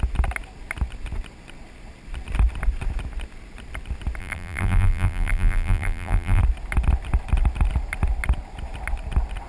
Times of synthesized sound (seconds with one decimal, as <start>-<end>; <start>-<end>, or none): 4.2-6.4